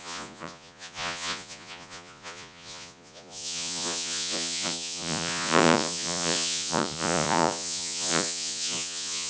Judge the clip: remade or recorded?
remade